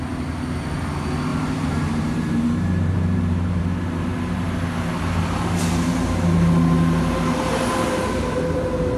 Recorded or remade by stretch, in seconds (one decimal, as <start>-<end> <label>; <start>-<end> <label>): 0.0-1.3 recorded; 1.3-3.6 remade; 3.6-9.0 recorded